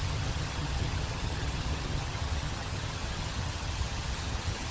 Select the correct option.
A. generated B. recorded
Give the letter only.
A